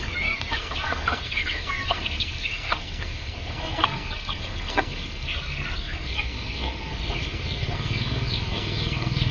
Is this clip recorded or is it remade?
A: remade